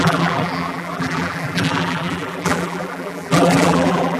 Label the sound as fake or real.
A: fake